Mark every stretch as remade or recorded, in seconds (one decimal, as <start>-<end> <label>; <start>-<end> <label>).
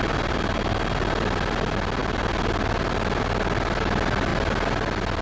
0.0-5.2 recorded